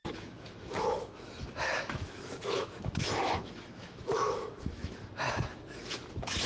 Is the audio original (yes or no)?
no